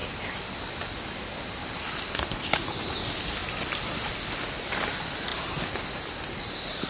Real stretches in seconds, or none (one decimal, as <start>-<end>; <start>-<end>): 0.0-6.9